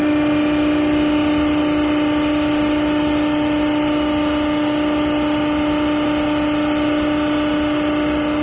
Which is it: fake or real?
real